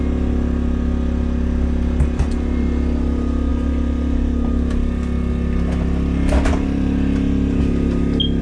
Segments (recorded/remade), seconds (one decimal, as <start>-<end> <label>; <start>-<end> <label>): 0.0-8.4 recorded